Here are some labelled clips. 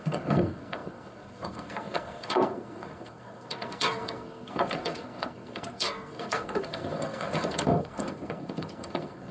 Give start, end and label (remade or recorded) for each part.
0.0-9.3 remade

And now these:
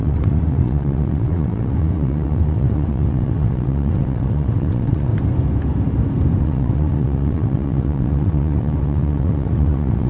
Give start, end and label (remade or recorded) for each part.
0.0-5.1 remade; 5.1-6.4 recorded; 6.4-10.1 remade

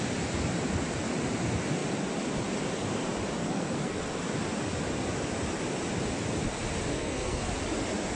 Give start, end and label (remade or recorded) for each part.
0.0-3.4 recorded; 3.4-4.0 remade; 4.0-6.9 recorded; 6.9-7.5 remade; 7.5-8.2 recorded